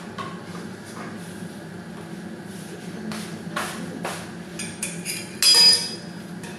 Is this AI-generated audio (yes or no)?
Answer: no